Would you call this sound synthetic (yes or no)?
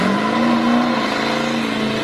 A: no